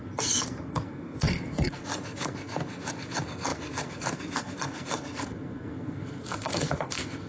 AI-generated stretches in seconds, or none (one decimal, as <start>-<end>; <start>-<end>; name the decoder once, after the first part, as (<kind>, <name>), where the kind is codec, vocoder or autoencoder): 0.0-7.3 (codec, SNAC)

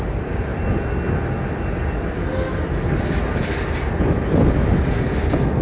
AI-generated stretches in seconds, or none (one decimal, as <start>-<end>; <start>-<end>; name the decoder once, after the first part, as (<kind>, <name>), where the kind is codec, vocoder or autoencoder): none

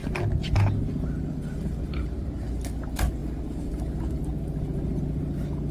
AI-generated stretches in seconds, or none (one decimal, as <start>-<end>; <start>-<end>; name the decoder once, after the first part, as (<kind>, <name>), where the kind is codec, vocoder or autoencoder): none

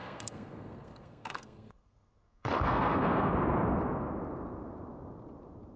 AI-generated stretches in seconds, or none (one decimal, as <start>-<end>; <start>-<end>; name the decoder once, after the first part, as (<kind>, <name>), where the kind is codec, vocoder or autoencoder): 0.0-3.3 (codec, SNAC)

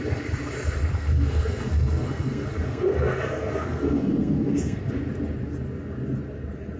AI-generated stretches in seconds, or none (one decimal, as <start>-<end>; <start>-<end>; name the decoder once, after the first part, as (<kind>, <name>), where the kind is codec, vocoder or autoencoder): 0.8-4.9 (codec, SNAC)

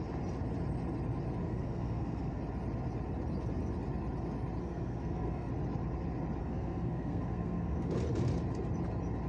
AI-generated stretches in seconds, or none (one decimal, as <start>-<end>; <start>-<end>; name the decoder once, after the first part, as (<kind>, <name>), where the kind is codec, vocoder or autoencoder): 1.4-2.4 (codec, SNAC); 4.6-5.5; 6.4-7.9